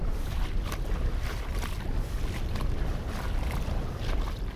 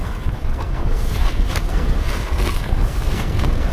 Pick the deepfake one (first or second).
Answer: second